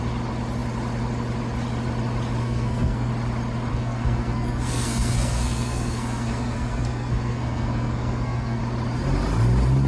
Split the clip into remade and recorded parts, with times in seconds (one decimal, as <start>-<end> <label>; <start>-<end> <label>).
0.0-2.4 recorded; 2.4-3.1 remade; 3.1-3.7 recorded; 3.7-8.6 remade; 8.6-9.9 recorded